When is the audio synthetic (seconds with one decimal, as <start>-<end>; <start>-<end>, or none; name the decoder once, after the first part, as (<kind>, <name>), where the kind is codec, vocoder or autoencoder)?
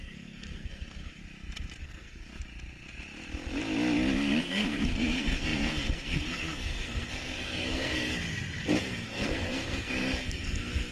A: 0.0-1.2 (codec, SNAC); 1.8-2.3; 4.4-8.1; 8.8-10.9